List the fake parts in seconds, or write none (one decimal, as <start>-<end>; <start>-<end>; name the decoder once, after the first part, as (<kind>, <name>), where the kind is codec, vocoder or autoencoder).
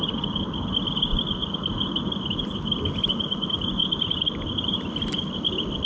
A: none